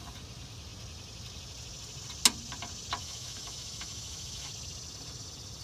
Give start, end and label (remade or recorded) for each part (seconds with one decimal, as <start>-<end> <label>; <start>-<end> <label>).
0.0-3.0 recorded; 3.0-4.5 remade; 4.5-5.6 recorded